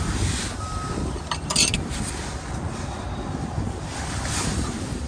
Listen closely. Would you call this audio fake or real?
real